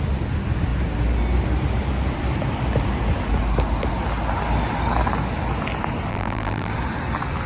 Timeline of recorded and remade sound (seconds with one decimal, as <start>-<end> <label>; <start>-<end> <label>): 0.0-6.1 recorded; 6.1-6.7 remade; 6.7-7.5 recorded

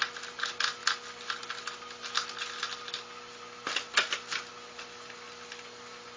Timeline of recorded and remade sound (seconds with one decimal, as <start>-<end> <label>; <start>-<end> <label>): 0.0-6.2 recorded

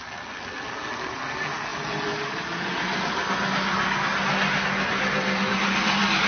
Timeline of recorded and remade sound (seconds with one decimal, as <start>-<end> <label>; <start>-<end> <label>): 0.0-6.3 recorded

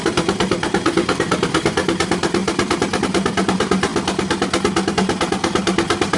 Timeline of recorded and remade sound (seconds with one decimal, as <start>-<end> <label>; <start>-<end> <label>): 0.0-3.9 remade; 3.9-4.9 recorded; 4.9-6.2 remade

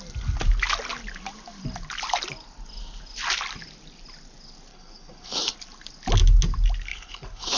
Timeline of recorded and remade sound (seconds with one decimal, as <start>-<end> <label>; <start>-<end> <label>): 0.0-4.7 recorded; 4.7-5.5 remade; 5.5-6.9 recorded; 6.9-7.6 remade

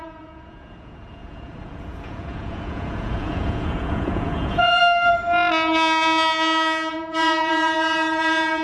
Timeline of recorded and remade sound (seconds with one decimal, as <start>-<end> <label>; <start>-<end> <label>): 0.0-4.8 remade; 4.8-6.9 recorded; 6.9-8.6 remade

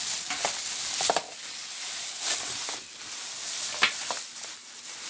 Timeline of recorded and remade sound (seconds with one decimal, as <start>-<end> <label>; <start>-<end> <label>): 0.0-4.6 recorded; 4.6-5.1 remade